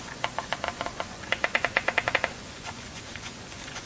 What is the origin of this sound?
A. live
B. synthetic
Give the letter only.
B